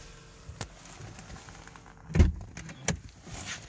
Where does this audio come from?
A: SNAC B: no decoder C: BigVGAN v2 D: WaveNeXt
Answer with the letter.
B